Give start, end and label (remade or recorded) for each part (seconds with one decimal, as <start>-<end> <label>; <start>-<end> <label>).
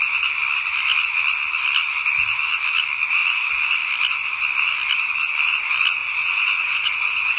0.0-6.0 recorded; 6.0-7.4 remade